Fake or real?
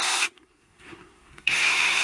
fake